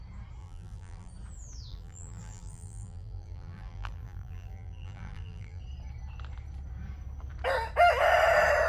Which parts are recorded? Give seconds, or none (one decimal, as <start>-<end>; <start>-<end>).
0.0-0.4; 1.1-1.7; 5.6-8.7